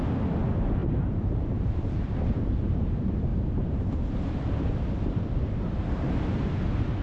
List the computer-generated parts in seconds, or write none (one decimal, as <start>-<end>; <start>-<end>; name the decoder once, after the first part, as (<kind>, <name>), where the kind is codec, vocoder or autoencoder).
0.8-2.8 (vocoder, BigVGAN v2); 3.3-6.6